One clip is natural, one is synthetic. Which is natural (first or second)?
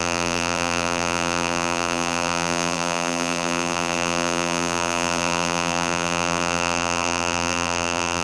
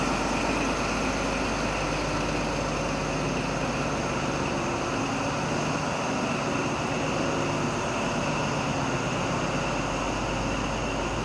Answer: second